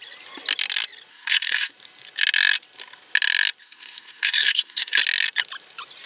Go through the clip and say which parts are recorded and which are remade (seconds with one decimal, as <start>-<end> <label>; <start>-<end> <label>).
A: 0.0-1.1 recorded; 1.1-1.7 remade; 1.7-3.6 recorded; 3.6-5.0 remade; 5.0-6.1 recorded